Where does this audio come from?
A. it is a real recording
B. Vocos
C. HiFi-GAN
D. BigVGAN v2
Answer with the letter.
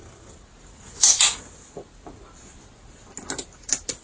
A